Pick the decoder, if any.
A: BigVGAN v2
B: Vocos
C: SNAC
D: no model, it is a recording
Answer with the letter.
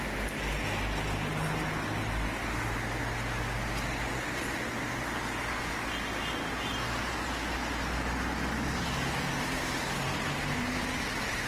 D